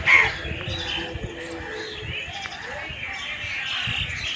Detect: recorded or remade recorded